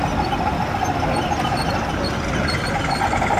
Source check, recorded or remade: recorded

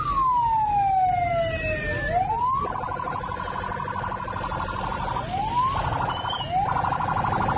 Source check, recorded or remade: recorded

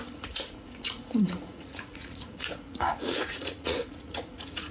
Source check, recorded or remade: remade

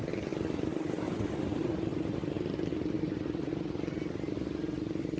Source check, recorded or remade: recorded